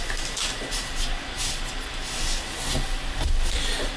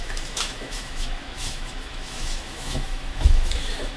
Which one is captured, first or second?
first